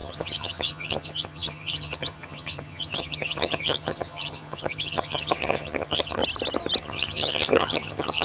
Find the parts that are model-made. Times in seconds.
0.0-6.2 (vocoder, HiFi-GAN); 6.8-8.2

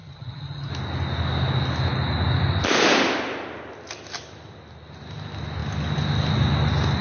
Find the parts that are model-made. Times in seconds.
0.0-0.7 (vocoder, HiFi-GAN)